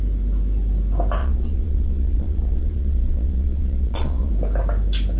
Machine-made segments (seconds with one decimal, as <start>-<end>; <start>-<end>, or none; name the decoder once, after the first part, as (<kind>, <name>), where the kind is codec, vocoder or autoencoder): 1.2-4.3 (vocoder, Vocos)

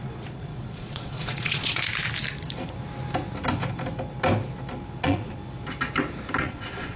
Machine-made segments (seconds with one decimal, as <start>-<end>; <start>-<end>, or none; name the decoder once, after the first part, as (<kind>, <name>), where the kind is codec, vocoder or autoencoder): 0.0-1.9 (vocoder, Vocos); 5.0-5.4; 6.4-7.0